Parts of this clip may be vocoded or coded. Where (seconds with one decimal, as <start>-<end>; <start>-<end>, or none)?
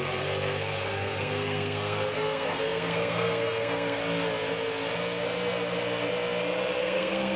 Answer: 0.0-4.0; 6.8-7.4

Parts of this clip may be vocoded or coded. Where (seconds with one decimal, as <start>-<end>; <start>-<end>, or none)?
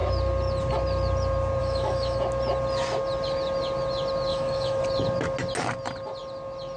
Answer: 1.6-2.2; 4.3-4.8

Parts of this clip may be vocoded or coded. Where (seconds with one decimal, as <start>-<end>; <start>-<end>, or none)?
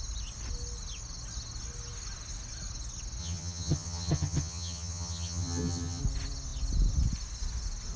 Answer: 3.2-6.0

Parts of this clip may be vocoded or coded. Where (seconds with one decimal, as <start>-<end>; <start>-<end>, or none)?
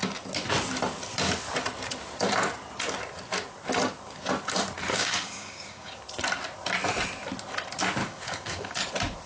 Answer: 4.9-6.0; 8.0-8.8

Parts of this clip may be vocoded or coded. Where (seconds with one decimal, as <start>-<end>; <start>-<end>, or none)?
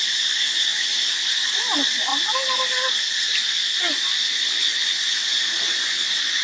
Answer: none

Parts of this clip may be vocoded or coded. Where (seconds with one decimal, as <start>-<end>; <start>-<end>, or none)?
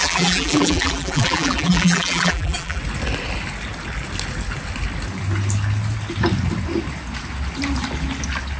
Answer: 0.0-2.8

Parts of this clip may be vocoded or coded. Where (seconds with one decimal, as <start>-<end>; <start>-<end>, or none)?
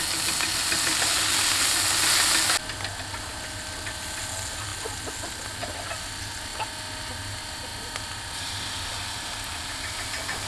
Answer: none